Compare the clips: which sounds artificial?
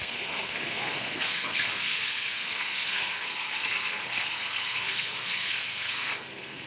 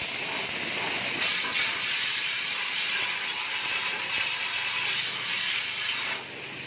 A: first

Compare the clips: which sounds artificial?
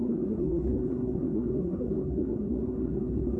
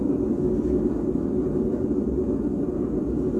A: first